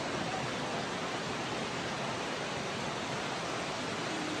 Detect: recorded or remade recorded